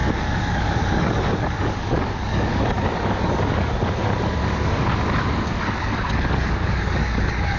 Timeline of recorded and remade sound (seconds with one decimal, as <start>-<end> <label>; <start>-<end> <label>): 0.0-7.6 remade